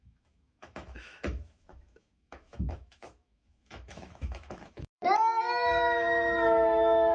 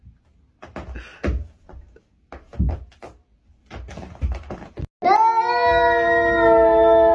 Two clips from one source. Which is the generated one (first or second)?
first